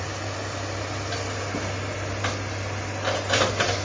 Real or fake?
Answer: real